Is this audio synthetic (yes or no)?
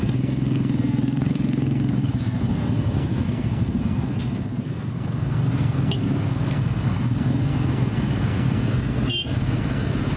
yes